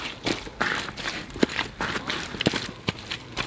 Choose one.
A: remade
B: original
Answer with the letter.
B